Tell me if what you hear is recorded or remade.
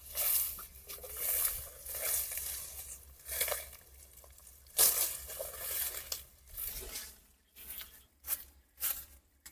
recorded